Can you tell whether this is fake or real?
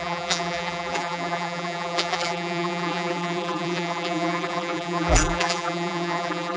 fake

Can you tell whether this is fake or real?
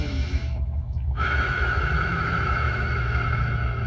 fake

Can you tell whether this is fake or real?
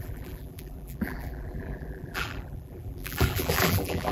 fake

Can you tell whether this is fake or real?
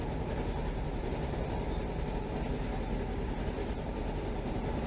real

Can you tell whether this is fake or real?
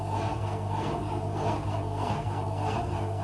fake